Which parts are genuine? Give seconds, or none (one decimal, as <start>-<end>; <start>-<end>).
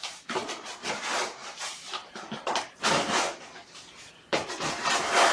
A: none